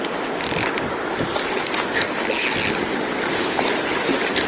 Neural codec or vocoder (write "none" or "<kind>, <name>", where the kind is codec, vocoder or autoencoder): none